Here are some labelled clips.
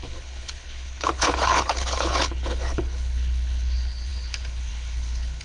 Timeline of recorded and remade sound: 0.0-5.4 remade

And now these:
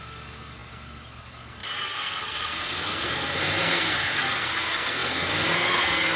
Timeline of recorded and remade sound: 0.0-6.2 remade

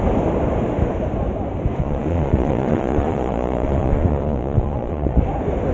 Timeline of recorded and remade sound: 0.0-1.8 recorded; 1.8-5.2 remade; 5.2-5.7 recorded